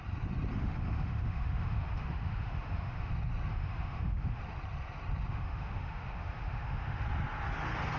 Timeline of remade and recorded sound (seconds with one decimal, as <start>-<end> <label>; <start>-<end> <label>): 0.0-0.5 recorded; 0.5-3.1 remade; 3.1-3.5 recorded; 3.5-4.4 remade; 4.4-5.3 recorded; 5.3-7.0 remade; 7.0-8.0 recorded